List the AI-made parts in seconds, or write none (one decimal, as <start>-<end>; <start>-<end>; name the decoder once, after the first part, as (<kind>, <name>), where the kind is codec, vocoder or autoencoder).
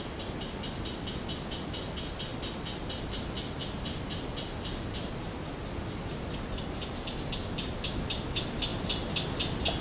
none